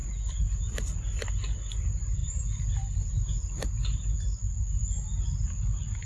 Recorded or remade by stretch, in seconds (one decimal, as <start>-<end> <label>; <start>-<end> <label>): 0.0-6.1 recorded